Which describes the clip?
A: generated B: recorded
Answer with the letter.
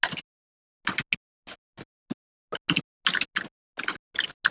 B